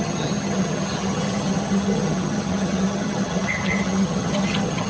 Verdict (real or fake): fake